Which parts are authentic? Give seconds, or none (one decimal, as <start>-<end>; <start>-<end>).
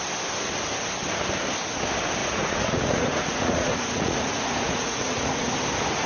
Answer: 0.0-2.2; 5.5-6.1